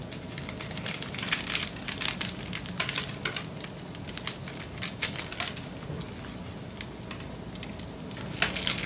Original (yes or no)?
yes